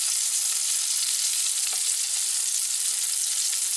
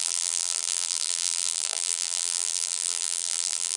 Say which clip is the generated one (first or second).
second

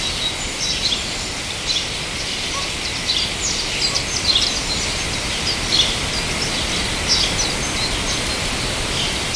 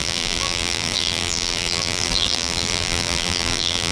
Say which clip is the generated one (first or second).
second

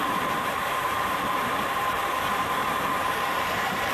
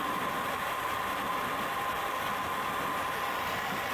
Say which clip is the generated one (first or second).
first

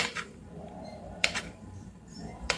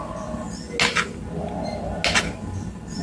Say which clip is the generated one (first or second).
first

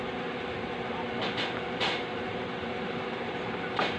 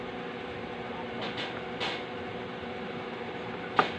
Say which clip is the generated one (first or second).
first